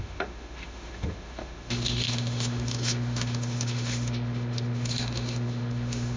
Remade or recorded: remade